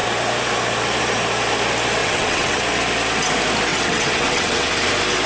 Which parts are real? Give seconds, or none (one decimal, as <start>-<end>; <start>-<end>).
0.0-2.0; 2.6-3.7; 4.7-5.3